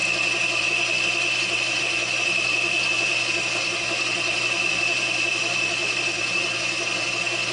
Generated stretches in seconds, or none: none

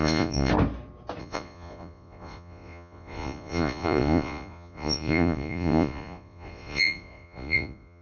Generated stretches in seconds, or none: 0.0-0.5 (vocoder, Vocos); 1.2-8.0

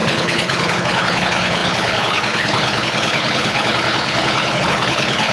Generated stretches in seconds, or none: 0.0-5.3 (codec, HILCodec)